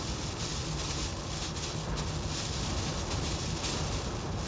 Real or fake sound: real